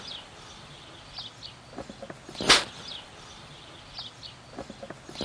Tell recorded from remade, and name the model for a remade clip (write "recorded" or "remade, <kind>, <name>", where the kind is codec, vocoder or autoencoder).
recorded